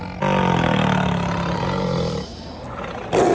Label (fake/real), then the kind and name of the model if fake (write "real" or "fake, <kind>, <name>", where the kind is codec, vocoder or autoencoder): real